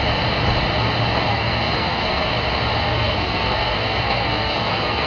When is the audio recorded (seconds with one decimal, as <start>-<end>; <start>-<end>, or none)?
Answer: 0.0-1.3; 2.3-2.9